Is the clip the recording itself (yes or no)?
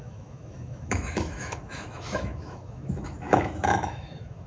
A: no